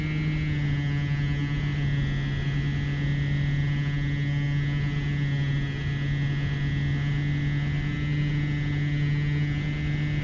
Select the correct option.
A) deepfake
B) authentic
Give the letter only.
B